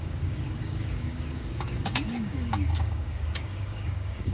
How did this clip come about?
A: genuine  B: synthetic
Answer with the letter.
B